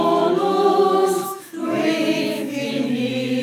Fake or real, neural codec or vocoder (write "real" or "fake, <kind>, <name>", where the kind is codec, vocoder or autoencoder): fake, autoencoder, DAC-VAE